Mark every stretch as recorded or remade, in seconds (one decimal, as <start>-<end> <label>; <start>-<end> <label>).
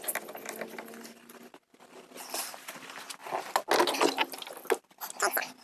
0.0-5.6 recorded